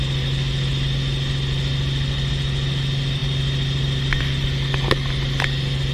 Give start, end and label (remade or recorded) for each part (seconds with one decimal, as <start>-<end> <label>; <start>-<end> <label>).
0.0-5.9 recorded